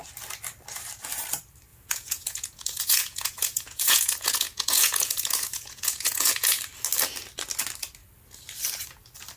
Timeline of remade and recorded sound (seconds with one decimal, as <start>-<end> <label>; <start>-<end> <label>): 0.0-1.7 recorded; 1.7-6.6 remade; 6.6-9.4 recorded